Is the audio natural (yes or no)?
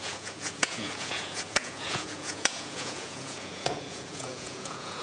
no